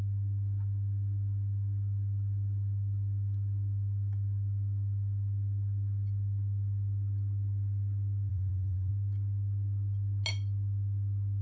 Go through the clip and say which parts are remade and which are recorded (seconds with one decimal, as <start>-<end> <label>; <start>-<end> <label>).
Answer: 0.0-8.3 recorded; 8.3-8.9 remade; 8.9-11.4 recorded